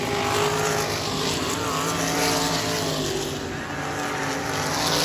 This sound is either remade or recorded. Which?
recorded